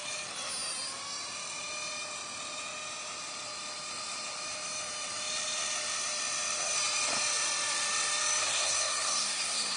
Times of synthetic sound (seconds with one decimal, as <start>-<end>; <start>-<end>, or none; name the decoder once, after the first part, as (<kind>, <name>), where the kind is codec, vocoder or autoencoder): 8.4-9.8 (codec, SNAC)